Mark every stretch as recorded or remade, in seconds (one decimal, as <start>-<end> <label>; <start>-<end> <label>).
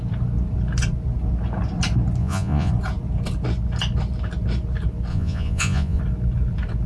0.0-2.2 recorded; 2.2-2.7 remade; 2.7-5.1 recorded; 5.1-6.0 remade; 6.0-6.9 recorded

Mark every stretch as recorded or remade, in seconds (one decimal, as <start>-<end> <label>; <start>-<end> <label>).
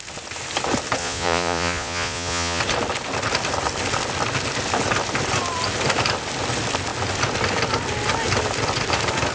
0.0-1.0 recorded; 1.0-2.6 remade; 2.6-9.3 recorded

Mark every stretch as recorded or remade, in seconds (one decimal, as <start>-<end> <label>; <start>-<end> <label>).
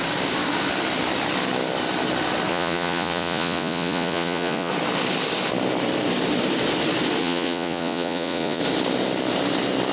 0.0-2.5 recorded; 2.5-4.7 remade; 4.7-7.2 recorded; 7.2-8.6 remade; 8.6-9.9 recorded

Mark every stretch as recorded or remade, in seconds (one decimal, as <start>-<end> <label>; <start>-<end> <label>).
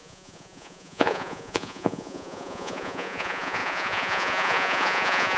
0.0-5.4 remade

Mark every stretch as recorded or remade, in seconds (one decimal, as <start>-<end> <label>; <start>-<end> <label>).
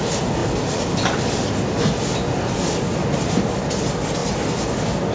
0.0-5.1 recorded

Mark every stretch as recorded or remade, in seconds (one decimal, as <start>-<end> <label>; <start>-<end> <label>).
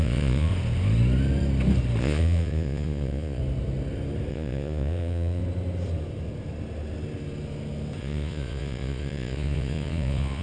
0.0-0.5 remade; 0.5-2.0 recorded; 2.0-3.4 remade; 3.4-4.3 recorded; 4.3-5.4 remade; 5.4-8.0 recorded; 8.0-10.4 remade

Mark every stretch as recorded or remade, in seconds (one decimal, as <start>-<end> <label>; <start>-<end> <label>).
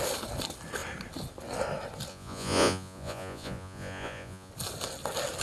0.0-2.1 recorded; 2.1-4.5 remade; 4.5-5.4 recorded